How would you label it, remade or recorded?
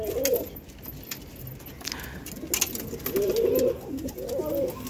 recorded